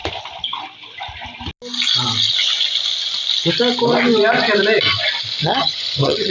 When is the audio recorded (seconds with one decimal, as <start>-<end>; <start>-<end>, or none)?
0.0-5.4